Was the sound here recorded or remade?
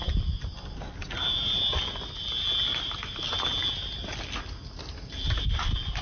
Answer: recorded